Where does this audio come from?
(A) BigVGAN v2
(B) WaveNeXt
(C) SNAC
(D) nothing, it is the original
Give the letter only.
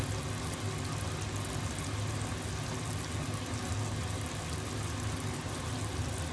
D